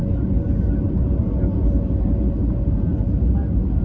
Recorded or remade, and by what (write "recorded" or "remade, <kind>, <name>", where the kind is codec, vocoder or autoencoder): remade, vocoder, BigVGAN v2